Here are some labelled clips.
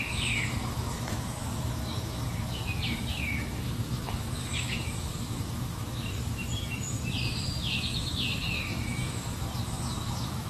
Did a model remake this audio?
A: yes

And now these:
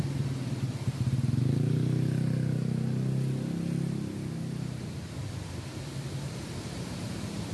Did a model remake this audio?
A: no